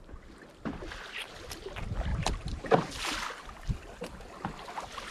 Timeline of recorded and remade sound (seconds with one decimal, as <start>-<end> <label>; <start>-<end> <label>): 0.0-2.1 recorded; 2.1-3.0 remade; 3.0-5.1 recorded